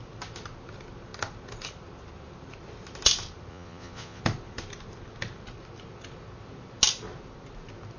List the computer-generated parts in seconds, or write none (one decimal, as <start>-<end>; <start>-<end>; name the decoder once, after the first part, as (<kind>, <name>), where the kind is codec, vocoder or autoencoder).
3.5-4.2 (vocoder, Vocos)

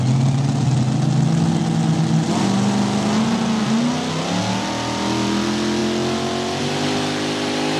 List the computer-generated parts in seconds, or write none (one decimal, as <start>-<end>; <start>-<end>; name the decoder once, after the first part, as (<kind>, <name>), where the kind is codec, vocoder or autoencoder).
none

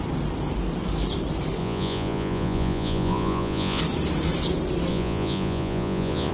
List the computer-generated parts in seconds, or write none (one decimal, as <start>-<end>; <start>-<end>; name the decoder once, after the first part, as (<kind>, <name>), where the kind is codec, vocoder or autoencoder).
1.6-3.8 (vocoder, Vocos); 4.9-6.3

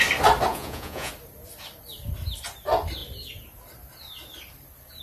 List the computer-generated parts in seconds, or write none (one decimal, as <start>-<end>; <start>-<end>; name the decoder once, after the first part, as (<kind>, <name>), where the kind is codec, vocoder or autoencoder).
0.5-1.1 (vocoder, Vocos)

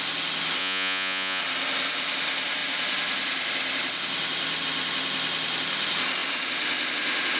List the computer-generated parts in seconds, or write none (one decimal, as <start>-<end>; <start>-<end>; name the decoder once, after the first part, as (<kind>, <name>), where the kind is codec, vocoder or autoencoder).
0.6-1.4 (vocoder, Vocos)

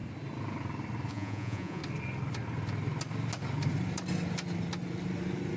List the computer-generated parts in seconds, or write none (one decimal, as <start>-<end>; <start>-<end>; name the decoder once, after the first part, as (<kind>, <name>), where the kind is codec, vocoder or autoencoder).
1.1-1.8 (vocoder, Vocos)